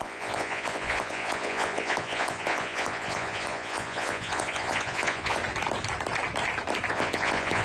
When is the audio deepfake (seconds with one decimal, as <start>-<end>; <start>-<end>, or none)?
0.0-5.4; 6.9-7.6